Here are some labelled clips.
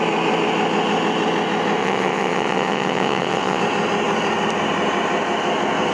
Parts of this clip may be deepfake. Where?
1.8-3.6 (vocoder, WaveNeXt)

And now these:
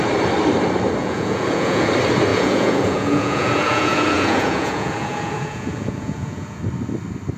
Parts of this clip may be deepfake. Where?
1.0-1.9 (vocoder, Vocos); 2.3-6.6

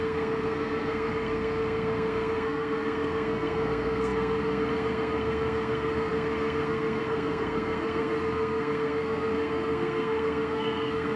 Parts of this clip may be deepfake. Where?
0.0-11.2 (codec, SNAC)

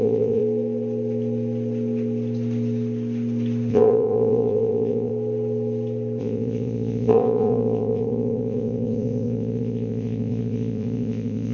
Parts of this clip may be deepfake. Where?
0.0-0.4 (vocoder, Vocos); 3.7-5.1; 6.2-11.5